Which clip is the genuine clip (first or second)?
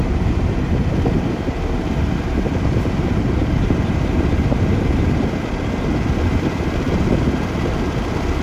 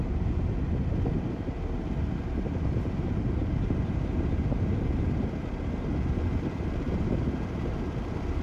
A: second